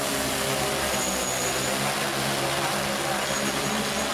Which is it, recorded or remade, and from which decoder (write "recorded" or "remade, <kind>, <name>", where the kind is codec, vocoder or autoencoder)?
recorded